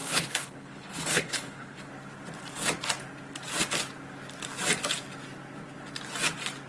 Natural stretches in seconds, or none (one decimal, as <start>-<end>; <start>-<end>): 1.9-6.7